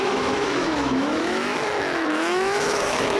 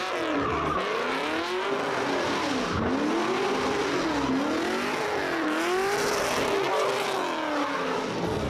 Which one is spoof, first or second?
first